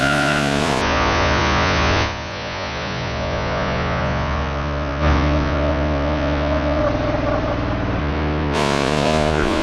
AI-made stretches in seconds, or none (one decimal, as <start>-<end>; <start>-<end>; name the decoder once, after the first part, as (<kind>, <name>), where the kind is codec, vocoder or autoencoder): 0.0-6.8 (vocoder, Vocos); 8.0-9.6

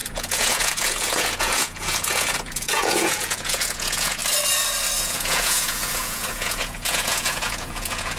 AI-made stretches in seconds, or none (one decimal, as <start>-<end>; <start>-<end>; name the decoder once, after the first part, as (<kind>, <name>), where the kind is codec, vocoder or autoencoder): 0.0-4.2 (vocoder, Vocos); 5.0-8.2

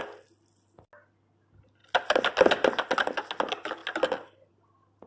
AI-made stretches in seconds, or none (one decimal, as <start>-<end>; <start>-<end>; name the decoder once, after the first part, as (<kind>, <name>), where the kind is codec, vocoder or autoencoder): none

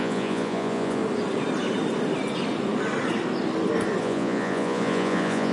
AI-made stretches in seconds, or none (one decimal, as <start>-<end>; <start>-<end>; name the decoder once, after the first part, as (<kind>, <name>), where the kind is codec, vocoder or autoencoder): 0.0-1.0 (vocoder, Vocos); 4.0-5.5

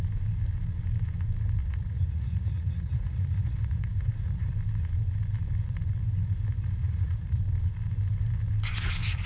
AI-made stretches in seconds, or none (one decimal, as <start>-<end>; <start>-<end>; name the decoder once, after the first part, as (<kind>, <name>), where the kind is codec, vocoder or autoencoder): 1.6-4.5 (vocoder, Vocos); 6.8-7.4

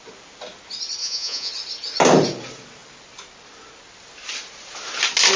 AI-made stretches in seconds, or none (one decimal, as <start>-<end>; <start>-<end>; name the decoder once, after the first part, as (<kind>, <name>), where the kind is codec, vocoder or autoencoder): 1.0-1.5 (vocoder, Vocos)

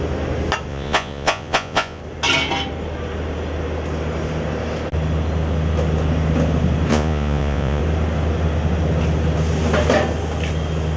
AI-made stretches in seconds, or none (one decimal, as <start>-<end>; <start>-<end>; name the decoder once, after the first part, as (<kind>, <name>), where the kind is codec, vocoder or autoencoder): 0.7-2.0 (vocoder, Vocos); 6.9-7.8